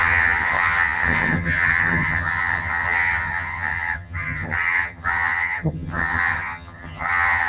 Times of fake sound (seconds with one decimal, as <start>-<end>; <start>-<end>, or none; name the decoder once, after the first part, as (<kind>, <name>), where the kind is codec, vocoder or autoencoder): 0.0-7.5 (vocoder, HiFi-GAN)